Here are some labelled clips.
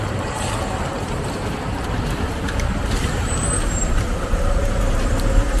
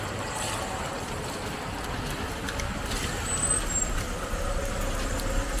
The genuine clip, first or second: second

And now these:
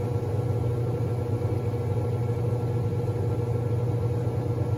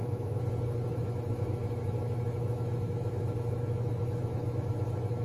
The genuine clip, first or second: first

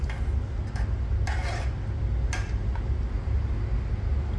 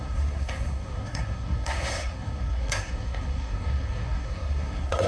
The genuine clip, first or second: first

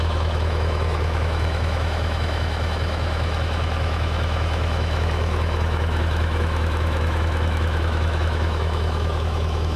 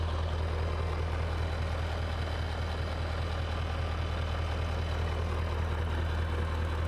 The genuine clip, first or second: second